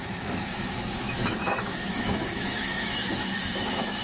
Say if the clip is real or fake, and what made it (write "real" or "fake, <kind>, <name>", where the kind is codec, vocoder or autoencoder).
fake, autoencoder, DAC-VAE